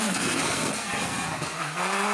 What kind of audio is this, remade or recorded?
remade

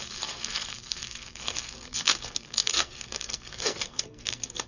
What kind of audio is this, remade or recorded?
remade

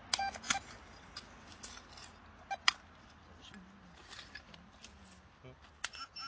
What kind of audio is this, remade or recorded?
recorded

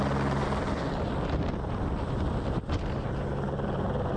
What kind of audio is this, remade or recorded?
recorded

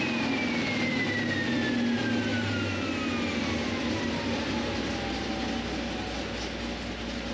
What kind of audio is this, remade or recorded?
recorded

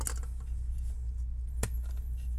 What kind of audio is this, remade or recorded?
recorded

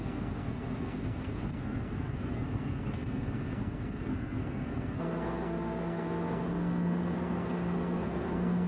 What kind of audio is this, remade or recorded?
remade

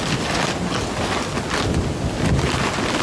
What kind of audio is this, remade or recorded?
recorded